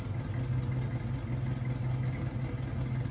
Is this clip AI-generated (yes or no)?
no